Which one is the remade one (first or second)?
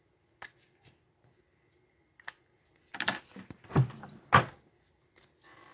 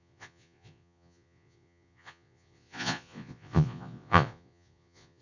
second